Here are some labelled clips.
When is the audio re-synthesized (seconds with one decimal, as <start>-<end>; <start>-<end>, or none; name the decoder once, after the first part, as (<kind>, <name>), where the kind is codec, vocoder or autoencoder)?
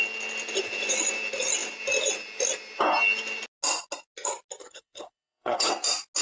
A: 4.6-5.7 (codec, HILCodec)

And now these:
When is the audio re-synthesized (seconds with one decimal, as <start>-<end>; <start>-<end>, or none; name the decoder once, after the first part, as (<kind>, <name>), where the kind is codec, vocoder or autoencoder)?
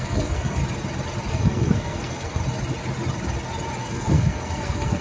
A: 0.0-0.6 (codec, SNAC); 1.3-2.4; 3.8-5.0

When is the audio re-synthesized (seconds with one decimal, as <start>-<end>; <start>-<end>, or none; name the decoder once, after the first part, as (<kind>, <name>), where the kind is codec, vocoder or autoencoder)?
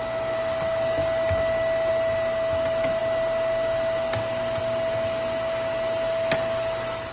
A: none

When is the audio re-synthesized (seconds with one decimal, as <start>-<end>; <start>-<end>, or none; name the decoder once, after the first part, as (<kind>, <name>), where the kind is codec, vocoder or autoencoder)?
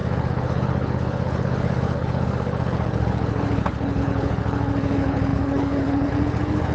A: 0.0-6.7 (codec, HILCodec)